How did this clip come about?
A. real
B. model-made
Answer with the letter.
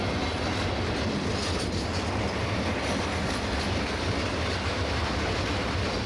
A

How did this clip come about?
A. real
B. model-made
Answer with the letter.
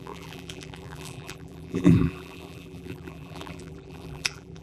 B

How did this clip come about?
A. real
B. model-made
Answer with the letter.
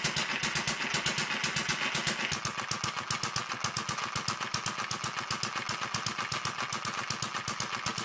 A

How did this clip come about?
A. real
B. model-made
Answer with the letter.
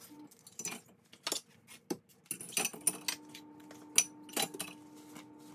A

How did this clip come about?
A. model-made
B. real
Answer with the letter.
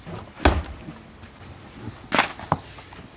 B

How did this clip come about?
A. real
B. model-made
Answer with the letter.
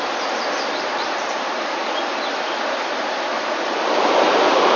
B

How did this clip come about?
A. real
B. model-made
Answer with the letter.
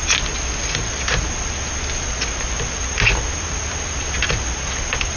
A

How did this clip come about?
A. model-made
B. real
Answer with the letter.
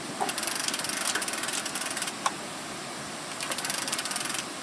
B